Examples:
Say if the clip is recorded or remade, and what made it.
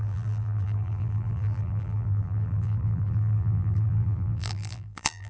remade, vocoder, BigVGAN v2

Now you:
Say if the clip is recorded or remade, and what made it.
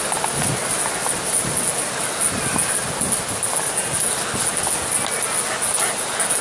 recorded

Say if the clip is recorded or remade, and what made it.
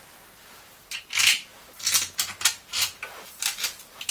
remade, vocoder, BigVGAN v2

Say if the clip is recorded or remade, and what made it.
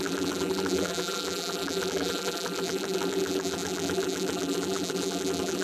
remade, vocoder, BigVGAN v2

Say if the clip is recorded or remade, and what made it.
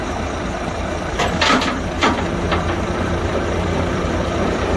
remade, vocoder, BigVGAN v2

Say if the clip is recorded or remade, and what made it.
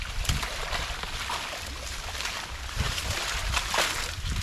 recorded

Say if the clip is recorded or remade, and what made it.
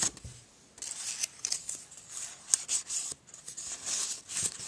recorded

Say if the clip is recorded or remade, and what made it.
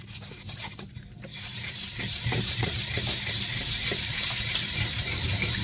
remade, vocoder, BigVGAN v2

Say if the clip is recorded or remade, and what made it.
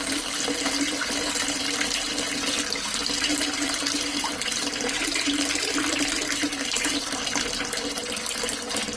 recorded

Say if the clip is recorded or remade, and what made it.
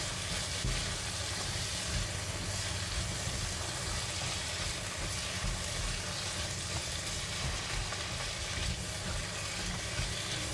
recorded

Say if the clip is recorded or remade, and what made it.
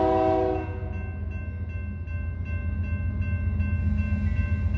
recorded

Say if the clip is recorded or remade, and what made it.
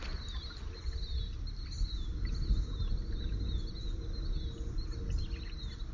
recorded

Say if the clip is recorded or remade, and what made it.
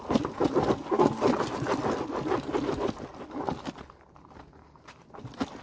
remade, vocoder, BigVGAN v2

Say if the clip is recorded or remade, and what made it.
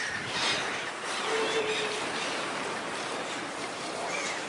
remade, vocoder, BigVGAN v2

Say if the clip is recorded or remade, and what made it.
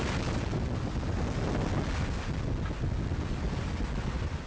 recorded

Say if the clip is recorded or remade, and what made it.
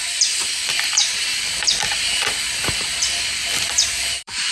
remade, vocoder, BigVGAN v2